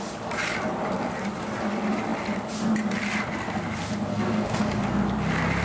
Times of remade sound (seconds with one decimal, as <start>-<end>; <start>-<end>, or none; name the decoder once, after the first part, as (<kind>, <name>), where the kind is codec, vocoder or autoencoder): 4.1-4.6 (codec, SNAC)